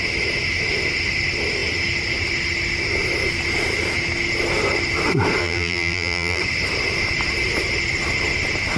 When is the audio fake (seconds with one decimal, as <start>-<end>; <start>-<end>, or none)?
5.4-6.4